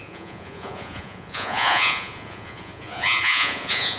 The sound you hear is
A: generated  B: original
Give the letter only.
A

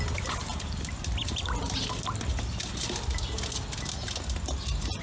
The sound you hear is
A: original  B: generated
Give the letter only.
A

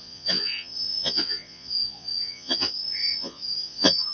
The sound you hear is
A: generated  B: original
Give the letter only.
A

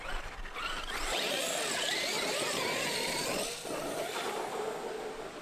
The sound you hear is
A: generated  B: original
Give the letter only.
B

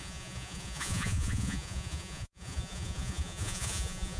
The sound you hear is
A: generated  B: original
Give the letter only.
A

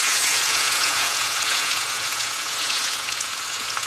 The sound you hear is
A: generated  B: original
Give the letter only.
A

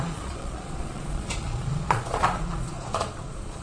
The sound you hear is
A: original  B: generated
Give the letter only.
B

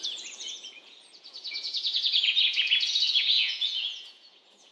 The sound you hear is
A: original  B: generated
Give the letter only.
B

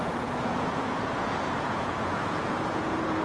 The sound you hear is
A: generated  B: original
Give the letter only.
A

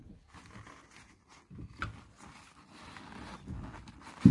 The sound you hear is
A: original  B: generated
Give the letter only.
A